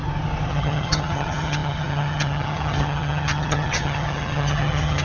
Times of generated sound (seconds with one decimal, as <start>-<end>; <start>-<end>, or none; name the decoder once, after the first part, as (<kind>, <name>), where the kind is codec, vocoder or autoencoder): 0.5-5.0 (vocoder, HiFi-GAN)